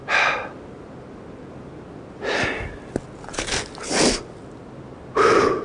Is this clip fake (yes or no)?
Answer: no